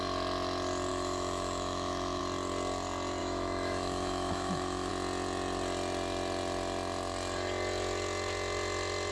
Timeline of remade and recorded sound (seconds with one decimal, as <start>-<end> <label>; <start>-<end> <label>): 0.0-0.9 recorded; 0.9-2.2 remade; 2.2-3.2 recorded; 3.2-4.9 remade; 4.9-9.1 recorded